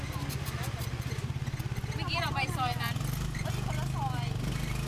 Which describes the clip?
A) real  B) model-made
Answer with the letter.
A